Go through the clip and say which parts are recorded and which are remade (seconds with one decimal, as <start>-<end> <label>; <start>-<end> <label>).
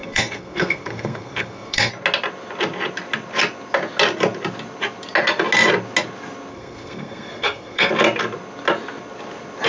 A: 0.0-1.9 remade; 1.9-6.5 recorded; 6.5-7.9 remade; 7.9-9.7 recorded